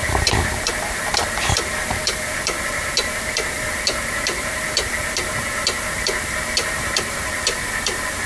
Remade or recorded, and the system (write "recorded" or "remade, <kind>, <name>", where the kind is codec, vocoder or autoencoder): remade, vocoder, BigVGAN v2